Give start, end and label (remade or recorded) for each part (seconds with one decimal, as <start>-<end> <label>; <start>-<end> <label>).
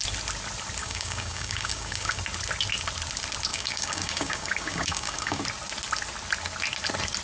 0.0-0.8 recorded; 0.8-2.2 remade; 2.2-3.5 recorded; 3.5-5.4 remade; 5.4-7.2 recorded